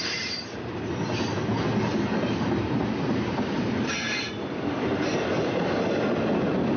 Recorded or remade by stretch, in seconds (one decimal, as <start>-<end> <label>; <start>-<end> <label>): 0.0-0.9 remade; 0.9-1.9 recorded; 1.9-4.3 remade; 4.3-6.8 recorded